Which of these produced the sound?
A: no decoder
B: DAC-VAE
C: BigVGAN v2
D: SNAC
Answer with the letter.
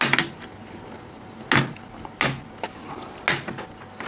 A